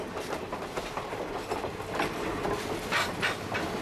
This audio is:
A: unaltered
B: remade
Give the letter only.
A